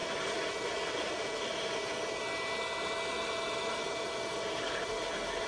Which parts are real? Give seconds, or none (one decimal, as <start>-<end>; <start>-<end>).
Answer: 0.0-5.5